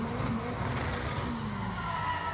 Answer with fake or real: real